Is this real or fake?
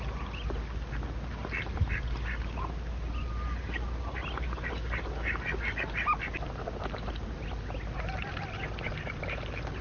real